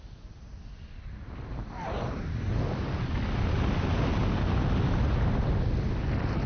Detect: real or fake real